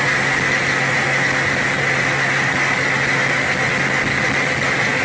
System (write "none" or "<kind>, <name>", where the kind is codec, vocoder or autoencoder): none